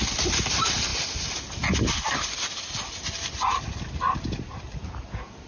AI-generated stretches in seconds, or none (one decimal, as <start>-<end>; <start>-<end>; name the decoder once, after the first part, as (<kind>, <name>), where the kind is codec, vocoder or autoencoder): none